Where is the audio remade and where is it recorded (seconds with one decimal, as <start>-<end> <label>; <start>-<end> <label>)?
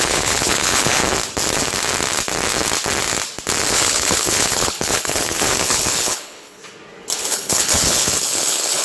0.0-1.0 remade; 1.0-3.7 recorded; 3.7-6.6 remade; 6.6-7.2 recorded; 7.2-8.8 remade